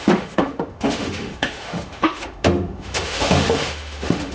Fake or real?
fake